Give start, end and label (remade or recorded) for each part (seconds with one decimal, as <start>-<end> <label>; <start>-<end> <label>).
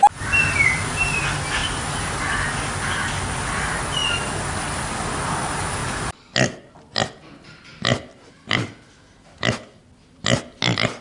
0.0-11.0 recorded